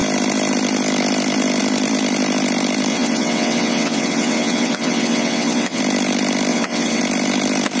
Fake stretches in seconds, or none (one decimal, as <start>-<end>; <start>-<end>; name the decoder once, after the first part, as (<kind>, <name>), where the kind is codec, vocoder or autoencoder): 2.9-5.8 (vocoder, WaveNeXt); 6.5-7.0